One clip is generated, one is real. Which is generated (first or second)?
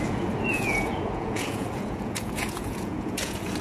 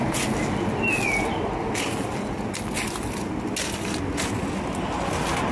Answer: first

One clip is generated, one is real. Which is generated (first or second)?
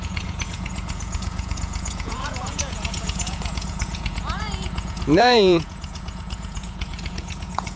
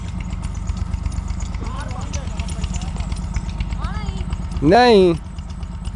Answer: first